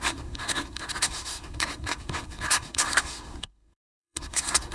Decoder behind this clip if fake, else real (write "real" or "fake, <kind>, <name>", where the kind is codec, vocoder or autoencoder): fake, codec, SNAC